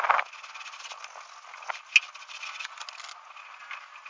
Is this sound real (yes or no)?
yes